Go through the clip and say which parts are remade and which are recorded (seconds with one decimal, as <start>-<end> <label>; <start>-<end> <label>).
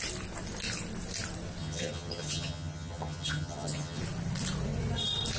0.0-1.6 recorded; 1.6-4.0 remade; 4.0-5.4 recorded